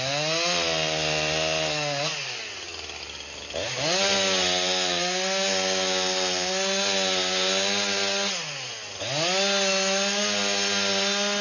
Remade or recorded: recorded